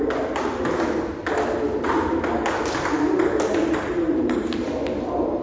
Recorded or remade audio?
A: recorded